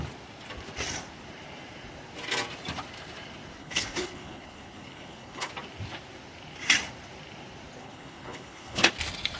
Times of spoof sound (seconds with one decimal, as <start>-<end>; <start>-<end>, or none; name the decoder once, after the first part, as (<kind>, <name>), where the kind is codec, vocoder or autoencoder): 3.6-5.5 (codec, HILCodec); 7.8-8.9